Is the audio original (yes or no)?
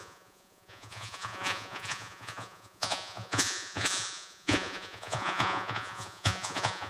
no